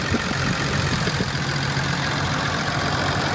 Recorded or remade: recorded